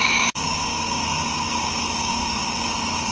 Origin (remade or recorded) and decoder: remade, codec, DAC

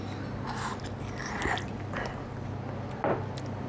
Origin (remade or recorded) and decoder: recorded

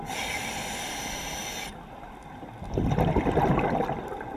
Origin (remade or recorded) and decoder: recorded